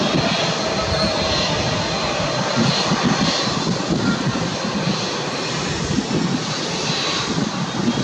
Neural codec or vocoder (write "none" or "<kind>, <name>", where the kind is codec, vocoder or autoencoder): none